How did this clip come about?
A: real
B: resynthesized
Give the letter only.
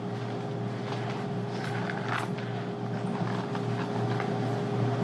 A